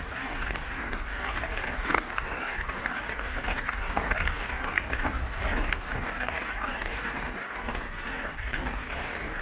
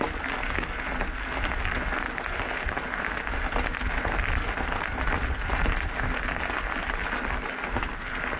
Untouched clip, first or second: second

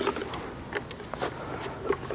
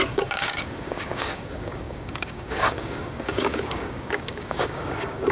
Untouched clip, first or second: first